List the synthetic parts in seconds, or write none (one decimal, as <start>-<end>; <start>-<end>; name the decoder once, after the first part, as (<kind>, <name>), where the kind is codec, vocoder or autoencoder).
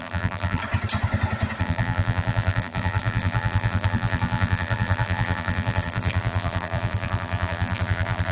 0.0-0.6 (vocoder, BigVGAN v2); 1.6-8.3